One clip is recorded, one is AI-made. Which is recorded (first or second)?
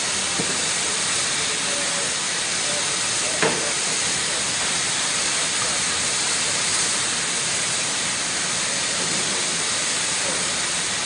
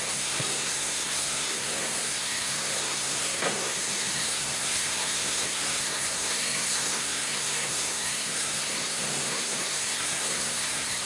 first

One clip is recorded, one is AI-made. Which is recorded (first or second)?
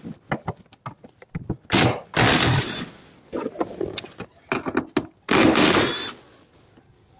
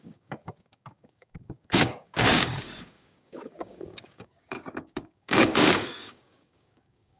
first